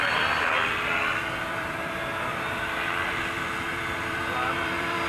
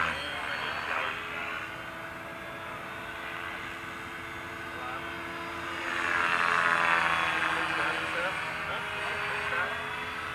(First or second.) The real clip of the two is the second